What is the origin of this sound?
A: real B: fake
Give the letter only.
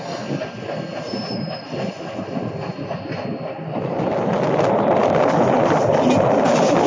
A